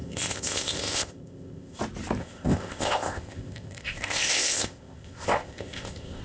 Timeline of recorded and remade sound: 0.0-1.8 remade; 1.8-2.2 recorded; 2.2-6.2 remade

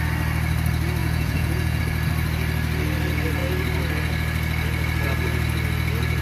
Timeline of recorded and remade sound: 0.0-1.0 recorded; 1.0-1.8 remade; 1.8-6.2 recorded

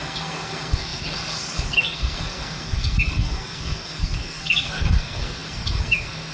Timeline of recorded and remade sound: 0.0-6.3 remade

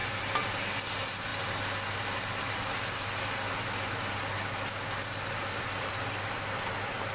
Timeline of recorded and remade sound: 0.0-7.1 recorded

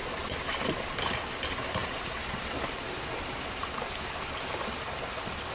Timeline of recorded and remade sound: 0.0-5.5 recorded

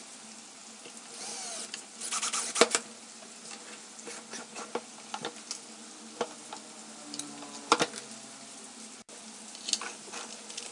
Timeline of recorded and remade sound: 0.0-10.7 recorded